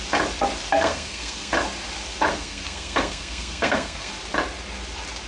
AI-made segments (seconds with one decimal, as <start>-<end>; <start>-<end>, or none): 0.7-1.5; 2.3-4.1